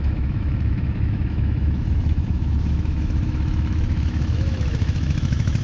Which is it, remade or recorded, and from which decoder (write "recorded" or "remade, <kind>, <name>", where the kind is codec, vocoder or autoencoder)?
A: remade, autoencoder, DAC-VAE